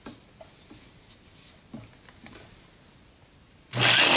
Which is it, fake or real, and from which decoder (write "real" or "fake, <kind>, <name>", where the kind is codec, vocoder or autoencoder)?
real